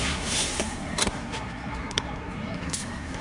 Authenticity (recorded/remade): remade